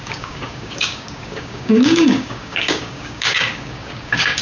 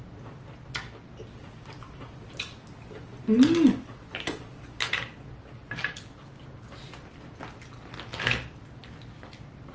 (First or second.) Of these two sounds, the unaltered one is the second